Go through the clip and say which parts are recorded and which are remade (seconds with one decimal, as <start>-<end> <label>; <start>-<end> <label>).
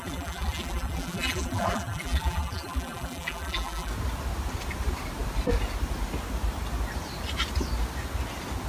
0.0-3.9 remade; 3.9-8.7 recorded